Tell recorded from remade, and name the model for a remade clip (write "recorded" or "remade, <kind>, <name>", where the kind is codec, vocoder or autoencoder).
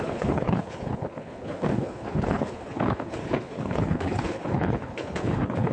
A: remade, codec, HILCodec